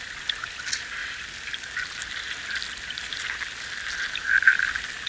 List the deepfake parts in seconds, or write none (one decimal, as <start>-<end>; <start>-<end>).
none